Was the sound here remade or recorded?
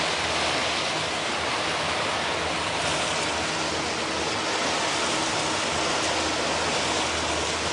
recorded